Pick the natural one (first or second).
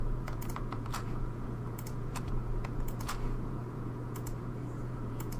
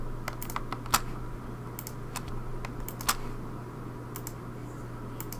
second